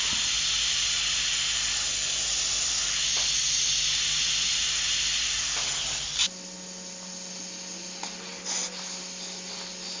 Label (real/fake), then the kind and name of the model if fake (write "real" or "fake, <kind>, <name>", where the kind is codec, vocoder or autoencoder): real